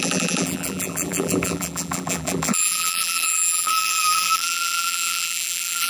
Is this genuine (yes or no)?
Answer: no